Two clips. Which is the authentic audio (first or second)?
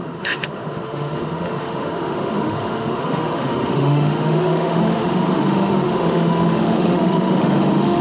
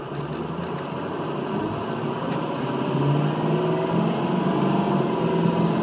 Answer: second